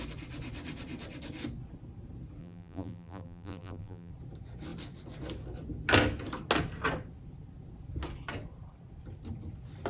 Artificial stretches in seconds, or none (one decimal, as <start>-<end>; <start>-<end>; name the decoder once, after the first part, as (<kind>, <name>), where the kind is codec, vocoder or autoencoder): 2.4-4.1 (vocoder, BigVGAN v2)